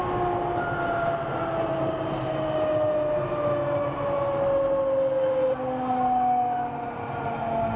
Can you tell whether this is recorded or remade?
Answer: recorded